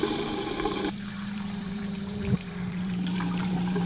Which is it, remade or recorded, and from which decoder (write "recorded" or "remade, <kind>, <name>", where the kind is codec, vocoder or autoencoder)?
remade, vocoder, BigVGAN v2